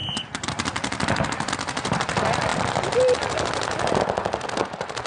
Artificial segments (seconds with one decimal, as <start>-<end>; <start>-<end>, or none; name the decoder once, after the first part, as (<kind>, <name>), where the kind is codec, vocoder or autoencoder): 2.5-4.0 (vocoder, BigVGAN v2)